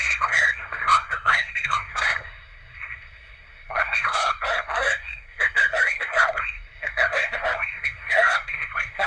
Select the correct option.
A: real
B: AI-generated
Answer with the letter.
B